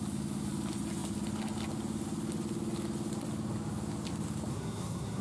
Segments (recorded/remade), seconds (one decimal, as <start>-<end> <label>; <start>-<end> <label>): 0.0-4.5 recorded; 4.5-5.2 remade